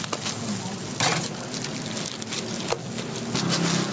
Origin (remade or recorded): recorded